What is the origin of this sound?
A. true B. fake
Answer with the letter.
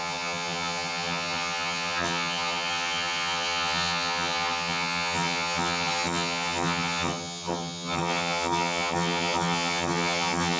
B